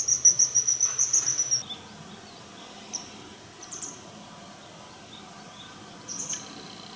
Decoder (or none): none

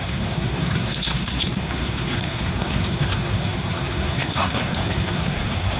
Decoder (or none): codec, SNAC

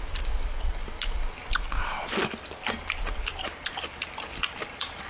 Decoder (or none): none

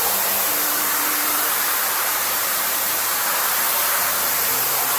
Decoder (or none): vocoder, BigVGAN v2